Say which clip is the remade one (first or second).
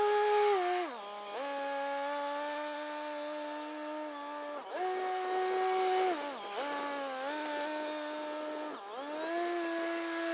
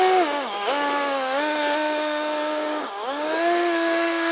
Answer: second